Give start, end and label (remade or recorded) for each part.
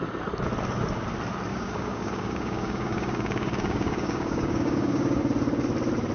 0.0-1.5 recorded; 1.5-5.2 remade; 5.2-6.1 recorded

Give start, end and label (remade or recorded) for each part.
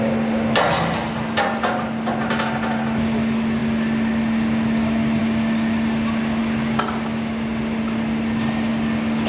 0.0-9.3 recorded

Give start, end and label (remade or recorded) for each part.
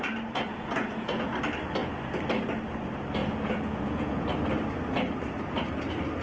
0.0-0.5 recorded; 0.5-1.3 remade; 1.3-3.2 recorded; 3.2-4.4 remade; 4.4-6.2 recorded